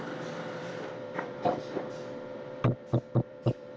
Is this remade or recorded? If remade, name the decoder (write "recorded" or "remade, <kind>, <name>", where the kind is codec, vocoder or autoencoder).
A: remade, vocoder, BigVGAN v2